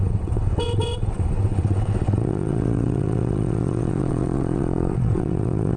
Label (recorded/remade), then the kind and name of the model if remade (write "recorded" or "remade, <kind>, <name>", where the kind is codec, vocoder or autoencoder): remade, vocoder, WaveNeXt